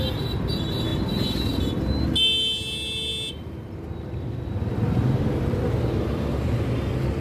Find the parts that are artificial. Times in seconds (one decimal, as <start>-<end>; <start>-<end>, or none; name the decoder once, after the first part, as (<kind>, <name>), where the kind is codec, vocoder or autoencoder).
none